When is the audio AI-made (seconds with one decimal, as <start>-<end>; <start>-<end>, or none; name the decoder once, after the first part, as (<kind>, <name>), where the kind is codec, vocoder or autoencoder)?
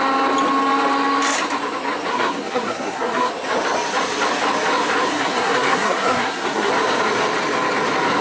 2.1-3.3 (codec, SNAC); 5.1-6.7